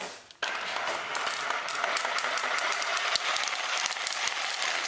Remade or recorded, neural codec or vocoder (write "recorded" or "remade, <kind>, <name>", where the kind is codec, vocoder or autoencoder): recorded